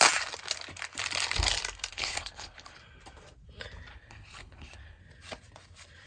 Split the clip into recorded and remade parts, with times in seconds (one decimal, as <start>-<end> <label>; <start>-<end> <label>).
0.0-1.9 recorded; 1.9-2.8 remade; 2.8-3.9 recorded; 3.9-5.0 remade; 5.0-6.1 recorded

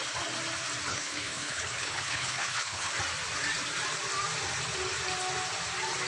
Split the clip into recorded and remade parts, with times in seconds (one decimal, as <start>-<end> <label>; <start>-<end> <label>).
0.0-0.9 recorded; 0.9-2.9 remade; 2.9-6.1 recorded